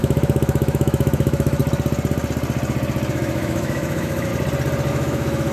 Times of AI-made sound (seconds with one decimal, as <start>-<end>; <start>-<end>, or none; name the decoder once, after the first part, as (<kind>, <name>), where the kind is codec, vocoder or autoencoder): 0.0-1.6 (autoencoder, DAC-VAE); 3.1-4.3; 4.9-5.5